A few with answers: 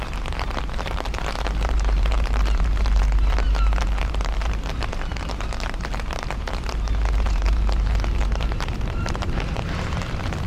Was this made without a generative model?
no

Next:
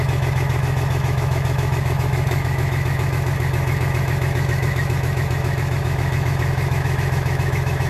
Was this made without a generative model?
no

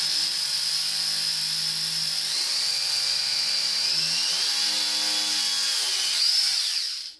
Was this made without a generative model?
yes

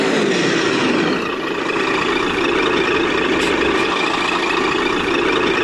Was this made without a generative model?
yes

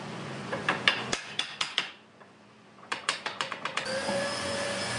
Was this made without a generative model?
no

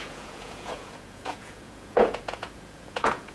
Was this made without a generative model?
no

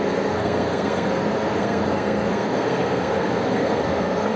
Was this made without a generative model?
no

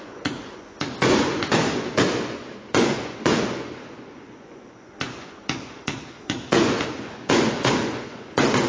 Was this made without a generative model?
no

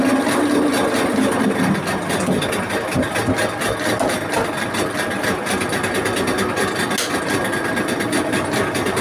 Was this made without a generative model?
yes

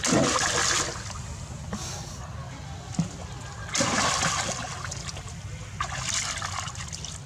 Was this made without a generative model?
yes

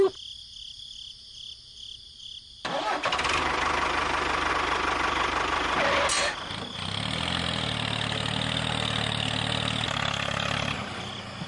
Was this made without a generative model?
yes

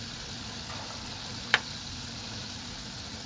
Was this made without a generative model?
no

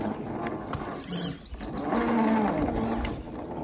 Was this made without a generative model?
yes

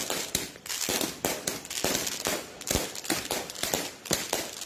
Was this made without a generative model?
yes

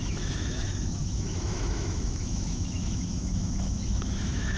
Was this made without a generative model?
no